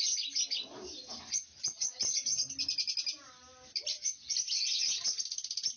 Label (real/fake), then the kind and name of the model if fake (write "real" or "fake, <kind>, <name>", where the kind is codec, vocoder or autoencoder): real